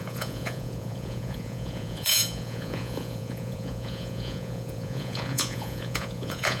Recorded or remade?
remade